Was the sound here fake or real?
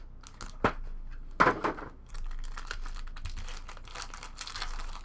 real